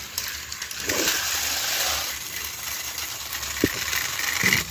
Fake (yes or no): yes